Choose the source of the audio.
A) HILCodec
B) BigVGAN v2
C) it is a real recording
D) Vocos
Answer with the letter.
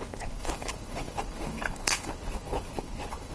A